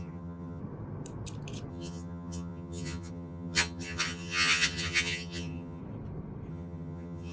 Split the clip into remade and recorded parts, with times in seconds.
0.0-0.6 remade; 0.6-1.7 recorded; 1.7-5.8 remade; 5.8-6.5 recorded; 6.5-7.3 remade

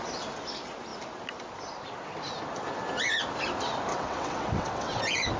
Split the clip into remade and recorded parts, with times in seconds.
0.0-3.9 recorded; 3.9-5.0 remade; 5.0-5.4 recorded

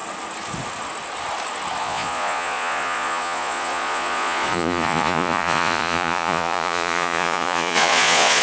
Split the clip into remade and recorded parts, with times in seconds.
0.0-1.8 recorded; 1.8-8.4 remade